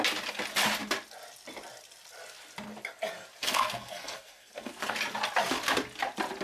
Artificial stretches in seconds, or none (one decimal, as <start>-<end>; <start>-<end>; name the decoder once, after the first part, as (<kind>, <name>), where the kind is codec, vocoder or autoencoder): 3.4-4.9 (codec, SNAC)